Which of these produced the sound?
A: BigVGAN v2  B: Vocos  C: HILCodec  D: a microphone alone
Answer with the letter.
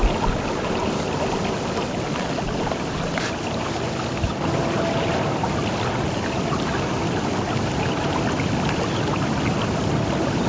D